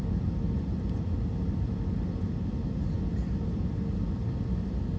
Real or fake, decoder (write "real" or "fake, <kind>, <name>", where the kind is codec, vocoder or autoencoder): real